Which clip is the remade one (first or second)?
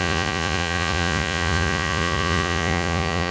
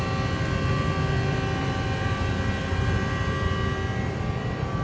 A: first